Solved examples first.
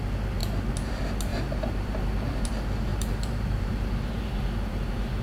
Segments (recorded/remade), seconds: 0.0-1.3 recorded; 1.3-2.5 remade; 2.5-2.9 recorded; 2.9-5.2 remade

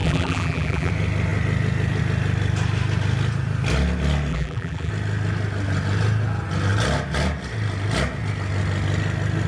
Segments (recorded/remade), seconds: 0.0-0.9 remade; 0.9-4.3 recorded; 4.3-4.9 remade; 4.9-9.5 recorded